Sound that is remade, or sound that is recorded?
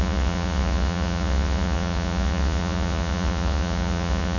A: remade